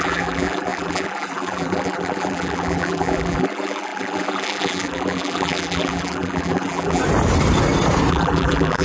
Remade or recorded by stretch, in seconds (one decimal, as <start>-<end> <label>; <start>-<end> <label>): 0.0-7.0 remade; 7.0-8.1 recorded; 8.1-8.8 remade